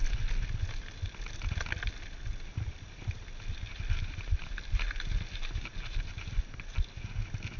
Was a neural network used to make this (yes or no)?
no